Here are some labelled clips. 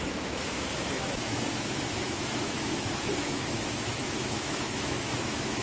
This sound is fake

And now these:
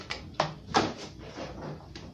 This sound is real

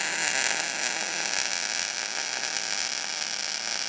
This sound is real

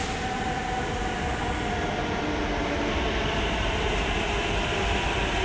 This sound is real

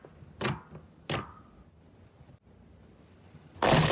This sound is real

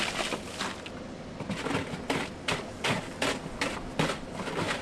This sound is real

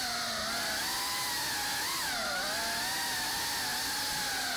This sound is real